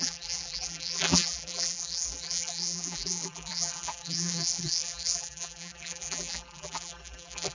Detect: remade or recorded remade